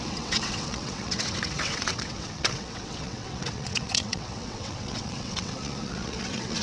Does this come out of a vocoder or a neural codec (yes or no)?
yes